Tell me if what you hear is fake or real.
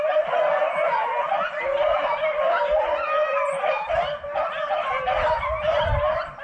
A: real